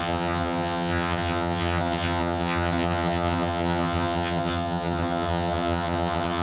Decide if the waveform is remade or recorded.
remade